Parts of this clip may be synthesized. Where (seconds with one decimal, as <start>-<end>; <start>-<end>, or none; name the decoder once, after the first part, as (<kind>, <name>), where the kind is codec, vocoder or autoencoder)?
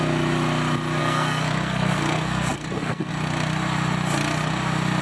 1.0-3.1 (codec, SNAC)